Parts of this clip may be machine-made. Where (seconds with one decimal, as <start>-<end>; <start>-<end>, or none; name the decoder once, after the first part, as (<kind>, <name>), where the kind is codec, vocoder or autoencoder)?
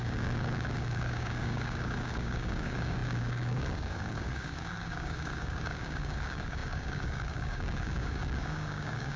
0.0-9.2 (codec, DAC)